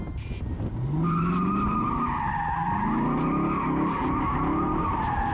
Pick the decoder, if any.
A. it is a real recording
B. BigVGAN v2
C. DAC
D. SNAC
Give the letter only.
A